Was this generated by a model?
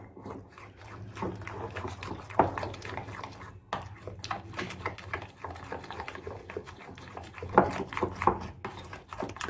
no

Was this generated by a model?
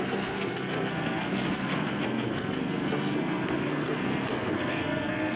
yes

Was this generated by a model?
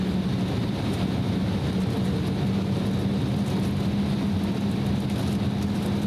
no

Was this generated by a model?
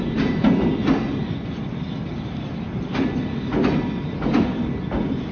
no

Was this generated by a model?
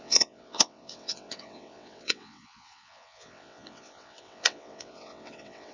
yes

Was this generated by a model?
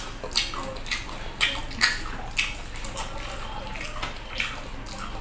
no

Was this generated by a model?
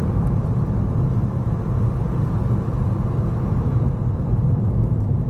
no